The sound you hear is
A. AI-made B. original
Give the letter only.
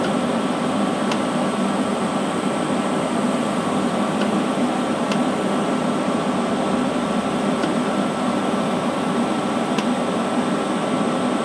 A